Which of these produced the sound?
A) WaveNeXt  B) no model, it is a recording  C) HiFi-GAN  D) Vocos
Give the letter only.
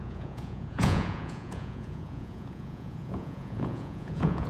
D